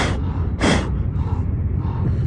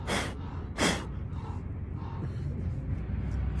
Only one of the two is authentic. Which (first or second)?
second